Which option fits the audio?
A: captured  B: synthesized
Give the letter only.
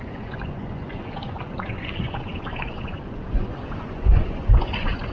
B